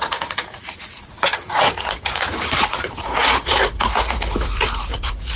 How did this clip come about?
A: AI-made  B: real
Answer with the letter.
A